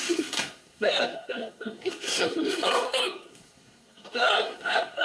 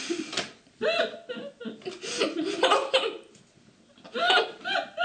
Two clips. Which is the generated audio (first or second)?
first